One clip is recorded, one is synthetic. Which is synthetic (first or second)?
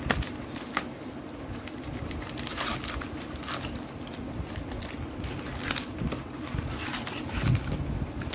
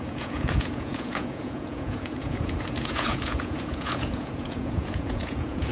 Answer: second